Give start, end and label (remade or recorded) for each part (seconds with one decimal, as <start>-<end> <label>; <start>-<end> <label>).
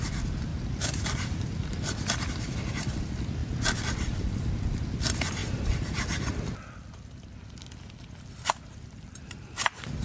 0.0-0.5 recorded; 0.5-3.0 remade; 3.0-3.4 recorded; 3.4-4.2 remade; 4.2-10.0 recorded